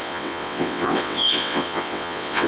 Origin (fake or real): fake